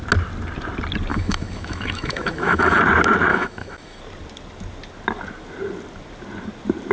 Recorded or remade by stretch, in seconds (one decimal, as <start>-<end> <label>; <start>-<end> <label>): 0.0-1.1 recorded; 1.1-2.8 remade; 2.8-3.3 recorded; 3.3-4.0 remade; 4.0-6.9 recorded